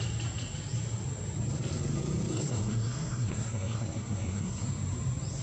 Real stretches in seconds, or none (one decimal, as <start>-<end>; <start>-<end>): 0.0-2.3; 4.7-5.4